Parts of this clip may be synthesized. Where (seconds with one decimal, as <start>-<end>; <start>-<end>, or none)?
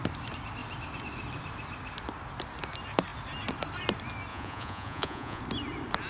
4.3-5.4